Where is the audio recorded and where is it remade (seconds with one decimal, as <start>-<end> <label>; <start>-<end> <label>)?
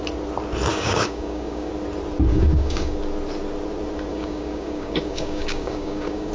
0.0-0.7 recorded; 0.7-1.7 remade; 1.7-2.3 recorded; 2.3-3.0 remade; 3.0-4.1 recorded; 4.1-6.3 remade